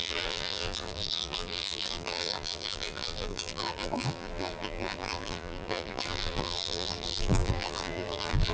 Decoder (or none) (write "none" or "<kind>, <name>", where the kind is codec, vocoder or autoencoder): vocoder, BigVGAN v2